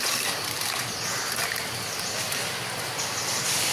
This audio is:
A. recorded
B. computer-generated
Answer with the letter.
A